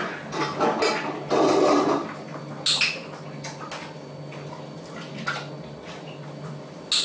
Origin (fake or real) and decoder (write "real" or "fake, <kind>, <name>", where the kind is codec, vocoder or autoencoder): real